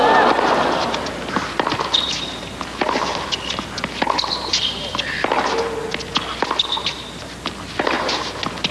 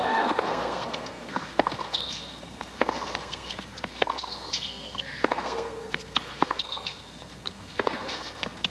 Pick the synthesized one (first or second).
second